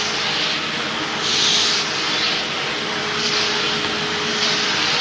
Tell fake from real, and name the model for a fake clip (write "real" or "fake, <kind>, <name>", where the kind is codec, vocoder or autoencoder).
real